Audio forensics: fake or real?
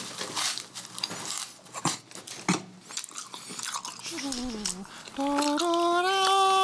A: real